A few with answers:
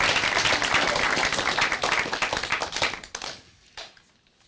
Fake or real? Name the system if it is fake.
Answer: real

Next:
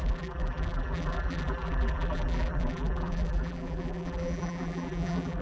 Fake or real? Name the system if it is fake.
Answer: fake, vocoder, BigVGAN v2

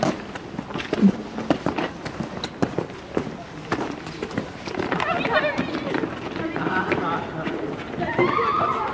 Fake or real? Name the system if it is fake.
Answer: real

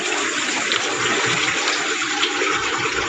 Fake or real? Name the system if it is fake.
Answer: real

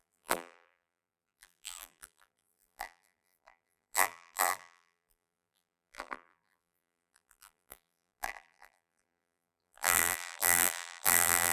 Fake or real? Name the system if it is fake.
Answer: fake, vocoder, BigVGAN v2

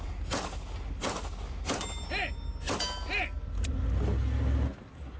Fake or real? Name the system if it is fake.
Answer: real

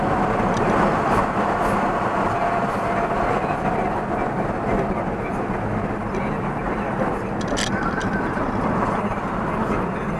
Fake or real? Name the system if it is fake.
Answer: real